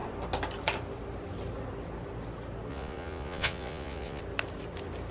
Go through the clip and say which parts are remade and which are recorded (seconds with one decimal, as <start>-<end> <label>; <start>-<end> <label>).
0.0-2.7 recorded; 2.7-4.2 remade; 4.2-5.1 recorded